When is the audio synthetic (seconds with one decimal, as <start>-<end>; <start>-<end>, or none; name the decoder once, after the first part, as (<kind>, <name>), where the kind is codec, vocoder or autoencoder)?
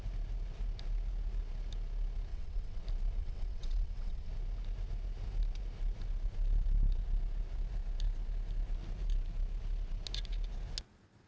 2.3-2.8 (vocoder, WaveNeXt); 3.2-4.3